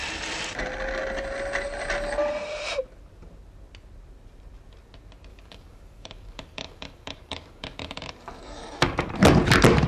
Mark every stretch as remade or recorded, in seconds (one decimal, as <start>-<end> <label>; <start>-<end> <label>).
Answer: 0.0-5.3 recorded; 5.3-9.1 remade; 9.1-9.9 recorded